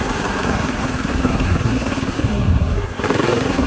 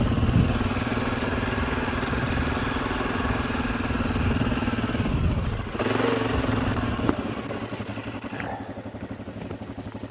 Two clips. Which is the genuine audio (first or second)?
second